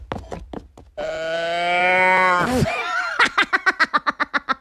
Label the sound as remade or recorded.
recorded